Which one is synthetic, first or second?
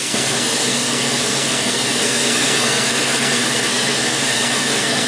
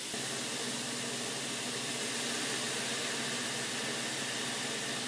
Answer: first